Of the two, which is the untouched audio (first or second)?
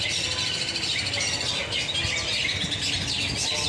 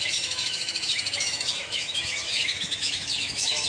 first